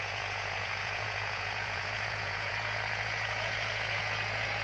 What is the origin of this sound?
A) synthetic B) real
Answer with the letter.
A